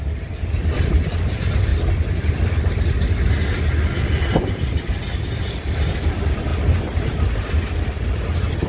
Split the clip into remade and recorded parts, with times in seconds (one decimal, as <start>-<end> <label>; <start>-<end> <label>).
0.0-8.7 recorded